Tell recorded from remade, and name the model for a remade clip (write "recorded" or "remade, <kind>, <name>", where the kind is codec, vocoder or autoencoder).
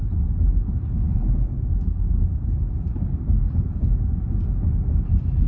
recorded